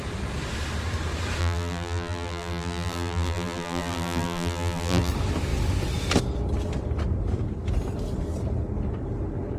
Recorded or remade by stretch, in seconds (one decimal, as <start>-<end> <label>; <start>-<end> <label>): 0.0-1.4 recorded; 1.4-5.1 remade; 5.1-9.6 recorded